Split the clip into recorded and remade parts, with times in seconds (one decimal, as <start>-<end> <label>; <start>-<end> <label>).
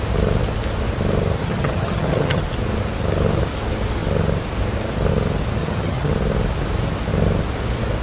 0.0-1.4 recorded; 1.4-2.4 remade; 2.4-5.6 recorded; 5.6-6.1 remade; 6.1-8.0 recorded